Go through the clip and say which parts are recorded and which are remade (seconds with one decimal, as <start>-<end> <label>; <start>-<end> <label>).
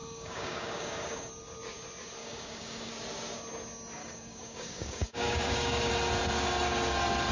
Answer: 0.0-1.3 remade; 1.3-2.2 recorded; 2.2-2.9 remade; 2.9-4.0 recorded; 4.0-5.9 remade; 5.9-7.3 recorded